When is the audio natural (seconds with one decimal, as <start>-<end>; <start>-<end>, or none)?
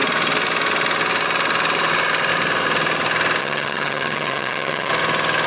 0.0-3.4; 4.9-5.5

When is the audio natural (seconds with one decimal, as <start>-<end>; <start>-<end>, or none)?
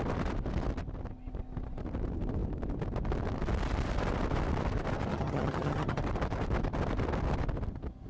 0.0-5.1; 6.0-8.1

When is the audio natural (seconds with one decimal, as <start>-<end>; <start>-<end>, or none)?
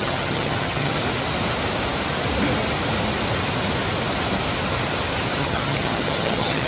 1.0-5.4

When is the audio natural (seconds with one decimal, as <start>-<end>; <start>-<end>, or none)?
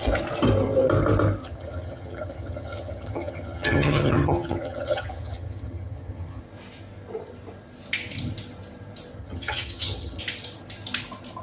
0.0-1.4; 6.4-9.2; 10.2-11.4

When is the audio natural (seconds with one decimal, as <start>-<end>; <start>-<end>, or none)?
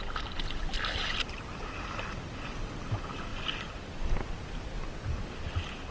0.0-5.9